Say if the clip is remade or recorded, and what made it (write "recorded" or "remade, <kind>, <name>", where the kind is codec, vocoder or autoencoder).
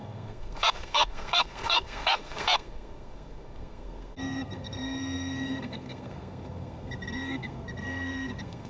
remade, codec, SNAC